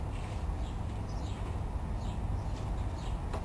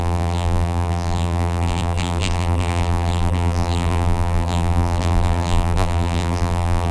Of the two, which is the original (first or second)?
first